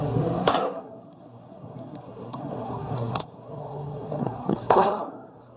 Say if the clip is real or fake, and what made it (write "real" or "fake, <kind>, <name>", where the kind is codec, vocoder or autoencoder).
fake, codec, SNAC